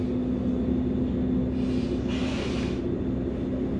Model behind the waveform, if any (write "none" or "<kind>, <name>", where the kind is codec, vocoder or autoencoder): none